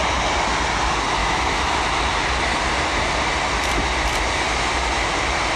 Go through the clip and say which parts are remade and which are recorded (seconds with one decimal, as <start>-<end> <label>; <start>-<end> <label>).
0.0-1.2 recorded; 1.2-1.8 remade; 1.8-5.6 recorded